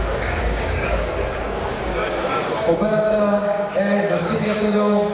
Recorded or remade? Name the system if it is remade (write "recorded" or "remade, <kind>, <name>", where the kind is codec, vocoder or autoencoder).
remade, codec, DAC